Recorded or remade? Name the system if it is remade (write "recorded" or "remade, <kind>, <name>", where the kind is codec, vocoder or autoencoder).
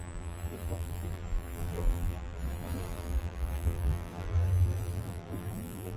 remade, vocoder, BigVGAN v2